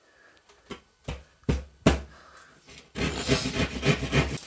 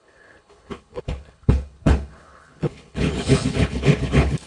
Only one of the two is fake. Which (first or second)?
second